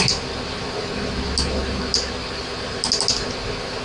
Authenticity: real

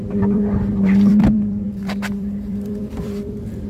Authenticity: fake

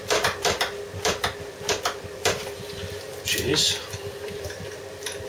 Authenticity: fake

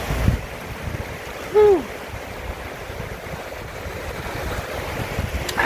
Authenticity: real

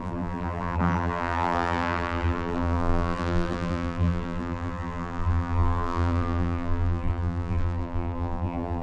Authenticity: fake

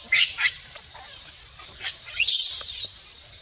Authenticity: fake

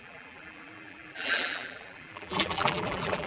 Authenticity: fake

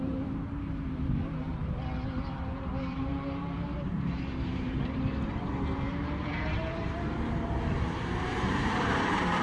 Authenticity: fake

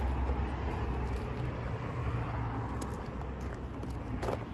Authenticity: real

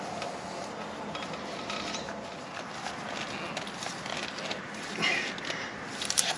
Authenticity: real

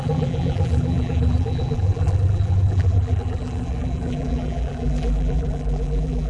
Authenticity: fake